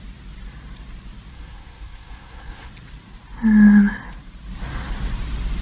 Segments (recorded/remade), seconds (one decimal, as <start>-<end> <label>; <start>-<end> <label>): 0.0-1.3 recorded; 1.3-2.7 remade; 2.7-5.6 recorded